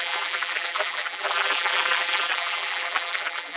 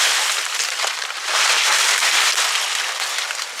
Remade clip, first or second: first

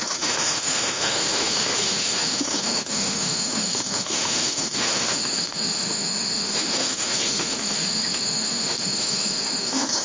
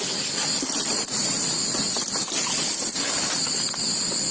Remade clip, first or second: first